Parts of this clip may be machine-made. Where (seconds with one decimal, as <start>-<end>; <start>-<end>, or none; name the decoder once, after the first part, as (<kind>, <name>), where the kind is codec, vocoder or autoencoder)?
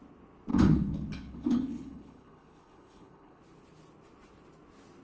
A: 0.5-3.4 (codec, HILCodec)